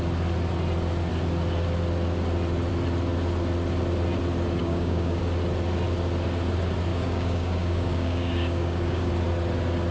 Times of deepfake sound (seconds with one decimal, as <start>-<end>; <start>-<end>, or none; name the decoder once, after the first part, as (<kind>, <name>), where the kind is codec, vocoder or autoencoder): 4.6-5.2 (codec, DAC); 6.9-9.1